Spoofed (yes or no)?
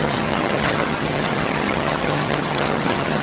yes